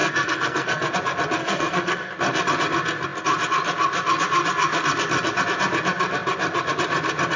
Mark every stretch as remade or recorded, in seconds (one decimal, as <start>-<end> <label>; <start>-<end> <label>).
0.0-0.9 remade; 0.9-1.4 recorded; 1.4-2.1 remade; 2.1-7.4 recorded

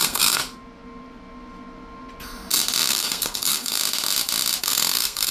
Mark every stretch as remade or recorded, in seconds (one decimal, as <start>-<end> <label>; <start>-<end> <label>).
0.0-0.4 remade; 0.4-2.9 recorded; 2.9-3.8 remade; 3.8-4.6 recorded; 4.6-5.3 remade

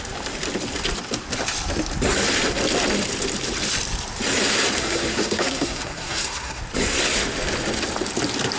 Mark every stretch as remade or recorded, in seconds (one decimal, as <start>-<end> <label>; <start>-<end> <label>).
0.0-4.8 recorded; 4.8-6.6 remade; 6.6-8.6 recorded

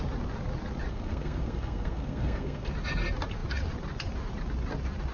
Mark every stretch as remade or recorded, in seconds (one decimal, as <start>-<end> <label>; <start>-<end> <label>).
0.0-0.9 recorded; 0.9-2.7 remade; 2.7-5.1 recorded

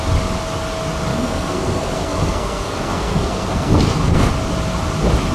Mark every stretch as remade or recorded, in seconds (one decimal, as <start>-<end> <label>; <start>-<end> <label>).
0.0-1.1 recorded; 1.1-4.3 remade; 4.3-5.3 recorded

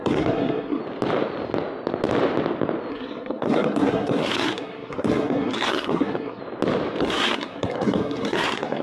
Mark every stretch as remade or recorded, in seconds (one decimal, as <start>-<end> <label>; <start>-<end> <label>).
0.0-0.8 remade; 0.8-2.9 recorded; 2.9-6.4 remade; 6.4-7.0 recorded; 7.0-8.8 remade

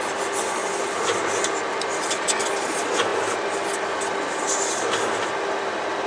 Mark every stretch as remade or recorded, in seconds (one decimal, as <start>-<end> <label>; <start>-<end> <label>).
0.0-6.1 recorded